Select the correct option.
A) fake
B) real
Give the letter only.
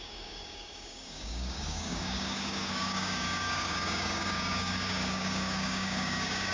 A